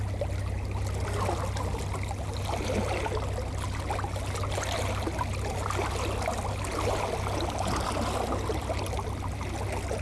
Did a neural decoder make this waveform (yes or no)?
no